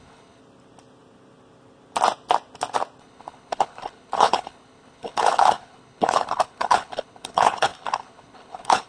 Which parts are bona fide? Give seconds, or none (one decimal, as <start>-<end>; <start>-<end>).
0.4-3.0